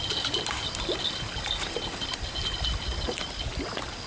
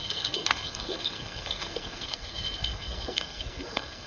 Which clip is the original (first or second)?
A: first